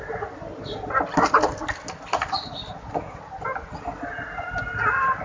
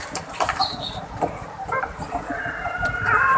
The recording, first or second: first